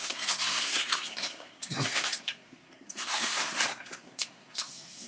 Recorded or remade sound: remade